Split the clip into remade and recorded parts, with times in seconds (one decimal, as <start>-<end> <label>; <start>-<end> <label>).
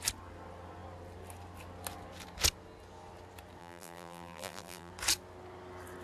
0.0-3.6 recorded; 3.6-4.9 remade; 4.9-6.0 recorded